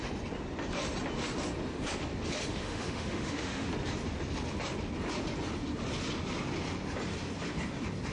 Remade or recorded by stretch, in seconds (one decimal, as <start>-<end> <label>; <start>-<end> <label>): 0.0-2.5 recorded; 2.5-3.7 remade; 3.7-8.1 recorded